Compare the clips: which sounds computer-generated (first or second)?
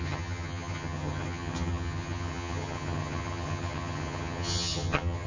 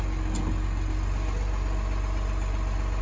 first